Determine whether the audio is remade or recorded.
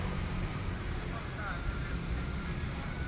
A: remade